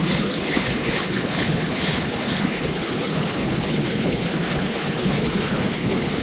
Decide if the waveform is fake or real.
fake